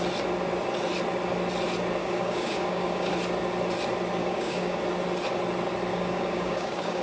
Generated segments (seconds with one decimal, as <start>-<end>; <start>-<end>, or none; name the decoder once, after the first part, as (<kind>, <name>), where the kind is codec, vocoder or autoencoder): 2.0-3.1 (codec, DAC); 4.2-4.8; 5.9-7.0